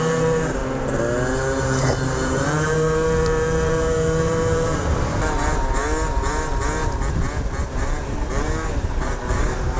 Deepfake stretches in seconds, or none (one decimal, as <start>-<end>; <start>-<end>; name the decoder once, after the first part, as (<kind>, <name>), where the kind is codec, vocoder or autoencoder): 0.0-0.6 (vocoder, BigVGAN v2); 1.6-5.8; 7.8-9.8